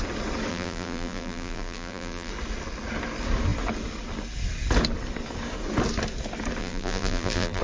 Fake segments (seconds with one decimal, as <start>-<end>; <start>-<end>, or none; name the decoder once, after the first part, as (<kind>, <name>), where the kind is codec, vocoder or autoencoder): 0.5-2.3 (vocoder, BigVGAN v2); 6.6-7.6